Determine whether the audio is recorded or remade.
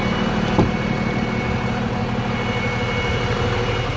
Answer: recorded